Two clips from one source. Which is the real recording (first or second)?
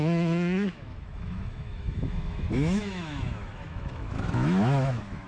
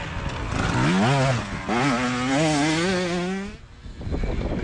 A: second